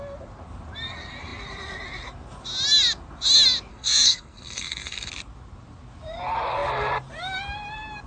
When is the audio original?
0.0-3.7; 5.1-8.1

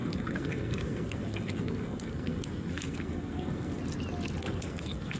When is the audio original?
3.8-4.4

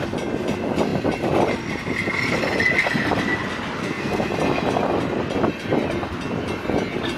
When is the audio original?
0.0-3.8; 4.3-7.2

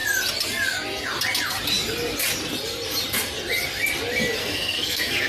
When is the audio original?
0.0-4.4

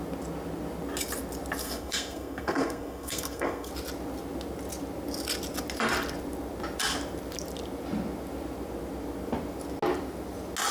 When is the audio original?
0.0-1.6; 3.7-10.7